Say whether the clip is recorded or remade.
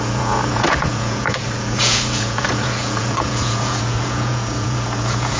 remade